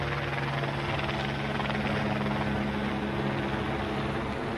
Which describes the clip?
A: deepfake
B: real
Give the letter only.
B